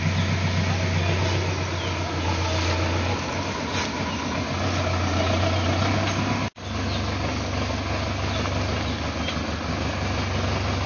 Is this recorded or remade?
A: recorded